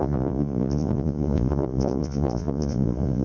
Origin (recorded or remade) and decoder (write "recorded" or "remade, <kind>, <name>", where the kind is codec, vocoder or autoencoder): remade, vocoder, Vocos